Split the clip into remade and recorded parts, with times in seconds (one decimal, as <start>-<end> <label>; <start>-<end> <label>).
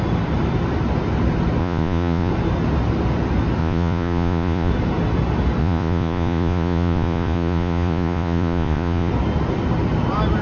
0.0-1.6 recorded; 1.6-2.3 remade; 2.3-3.6 recorded; 3.6-4.7 remade; 4.7-5.6 recorded; 5.6-9.1 remade; 9.1-10.4 recorded